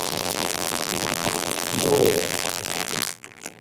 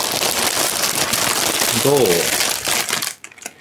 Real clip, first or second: second